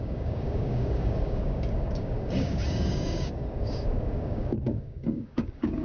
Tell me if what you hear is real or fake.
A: fake